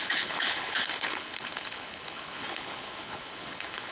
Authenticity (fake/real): fake